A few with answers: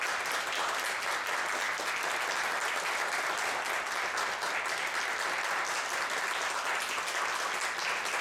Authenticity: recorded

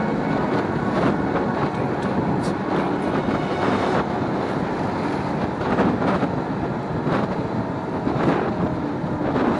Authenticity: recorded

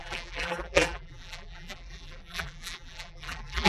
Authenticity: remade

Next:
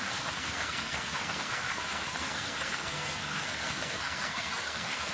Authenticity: remade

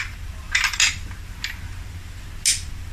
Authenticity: recorded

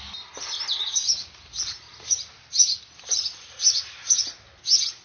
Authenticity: recorded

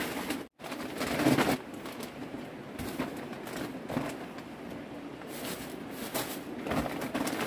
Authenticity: recorded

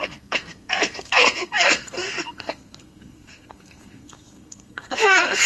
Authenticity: remade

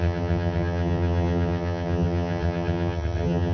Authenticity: remade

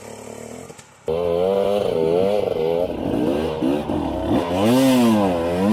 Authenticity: recorded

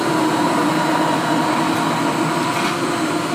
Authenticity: recorded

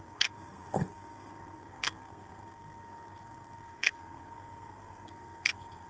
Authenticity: remade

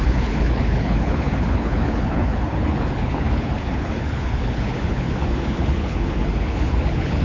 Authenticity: remade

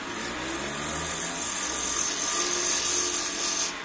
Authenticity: recorded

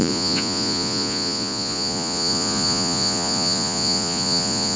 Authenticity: remade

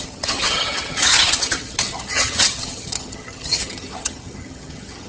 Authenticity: remade